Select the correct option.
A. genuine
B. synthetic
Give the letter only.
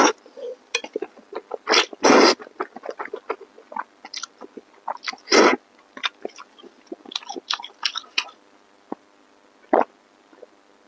A